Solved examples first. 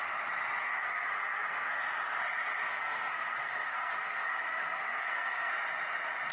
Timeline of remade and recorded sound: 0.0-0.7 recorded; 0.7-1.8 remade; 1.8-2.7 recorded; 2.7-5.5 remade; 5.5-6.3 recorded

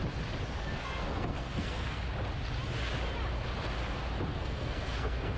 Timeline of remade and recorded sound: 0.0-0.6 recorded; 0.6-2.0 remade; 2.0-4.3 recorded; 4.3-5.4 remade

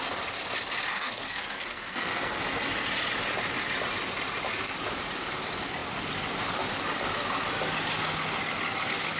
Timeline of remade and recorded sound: 0.0-0.9 recorded; 0.9-2.4 remade; 2.4-9.2 recorded

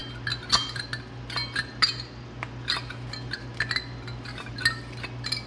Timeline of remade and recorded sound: 0.0-5.5 recorded

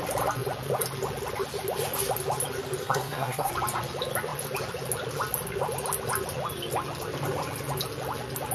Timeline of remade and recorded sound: 0.0-2.8 recorded; 2.8-3.5 remade; 3.5-8.5 recorded

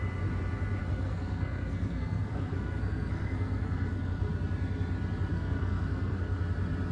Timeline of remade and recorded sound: 0.0-0.8 recorded; 0.8-4.3 remade; 4.3-5.3 recorded; 5.3-6.4 remade; 6.4-6.9 recorded

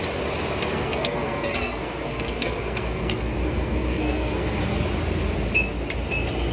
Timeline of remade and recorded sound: 0.0-0.7 recorded; 0.7-4.6 remade; 4.6-6.5 recorded

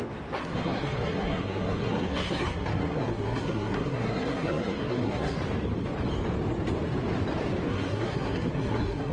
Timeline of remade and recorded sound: 0.0-0.4 recorded; 0.4-5.4 remade; 5.4-7.7 recorded; 7.7-9.1 remade